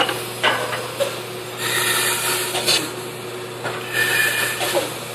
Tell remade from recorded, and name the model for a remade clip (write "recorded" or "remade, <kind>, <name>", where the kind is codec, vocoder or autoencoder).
recorded